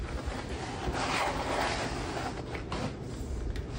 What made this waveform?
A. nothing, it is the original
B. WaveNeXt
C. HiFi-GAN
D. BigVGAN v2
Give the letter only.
A